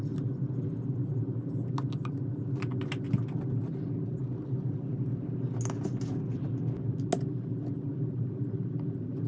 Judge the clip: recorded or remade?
recorded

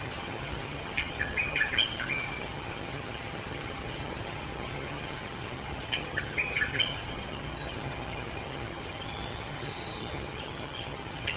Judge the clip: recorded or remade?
remade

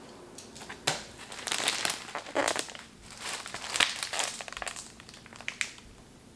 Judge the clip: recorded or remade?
recorded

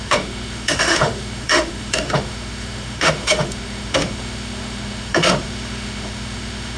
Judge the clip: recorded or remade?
remade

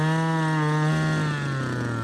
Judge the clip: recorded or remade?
recorded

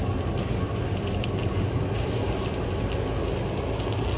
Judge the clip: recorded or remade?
recorded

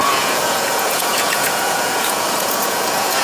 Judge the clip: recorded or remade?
remade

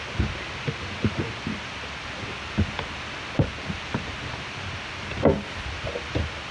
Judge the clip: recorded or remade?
recorded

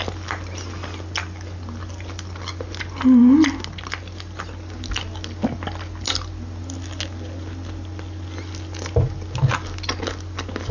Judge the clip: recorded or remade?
recorded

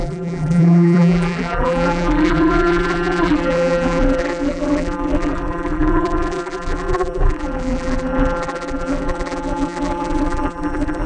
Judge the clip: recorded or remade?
remade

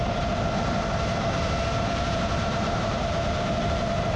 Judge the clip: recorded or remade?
remade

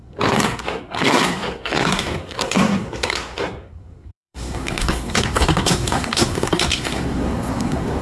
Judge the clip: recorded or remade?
remade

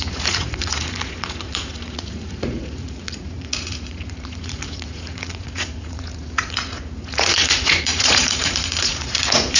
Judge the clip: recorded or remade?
remade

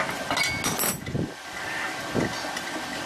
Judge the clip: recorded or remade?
recorded